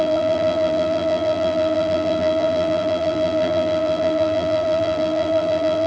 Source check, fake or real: fake